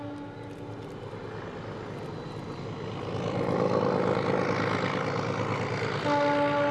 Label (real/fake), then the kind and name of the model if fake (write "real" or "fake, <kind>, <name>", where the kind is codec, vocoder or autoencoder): real